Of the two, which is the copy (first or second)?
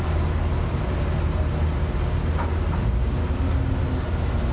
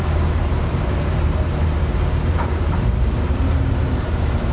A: second